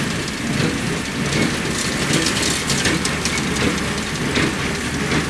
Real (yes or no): yes